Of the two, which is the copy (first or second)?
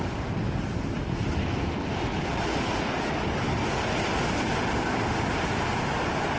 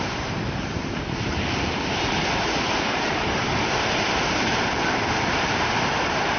second